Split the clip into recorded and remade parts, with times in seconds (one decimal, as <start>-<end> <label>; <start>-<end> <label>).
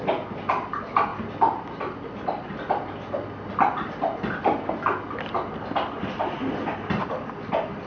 0.0-7.9 recorded